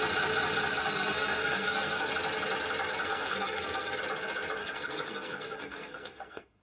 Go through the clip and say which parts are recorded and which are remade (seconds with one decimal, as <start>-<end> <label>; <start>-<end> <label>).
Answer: 0.0-0.8 recorded; 0.8-2.1 remade; 2.1-3.0 recorded; 3.0-4.0 remade; 4.0-4.6 recorded; 4.6-6.6 remade